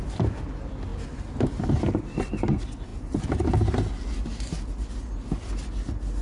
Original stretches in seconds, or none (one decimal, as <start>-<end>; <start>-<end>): 0.0-6.2